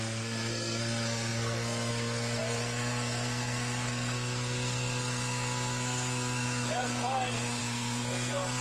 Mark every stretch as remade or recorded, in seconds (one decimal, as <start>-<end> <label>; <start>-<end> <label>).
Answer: 0.0-8.6 remade